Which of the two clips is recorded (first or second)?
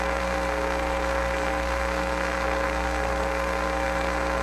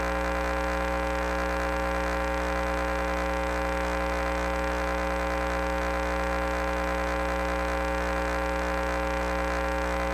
second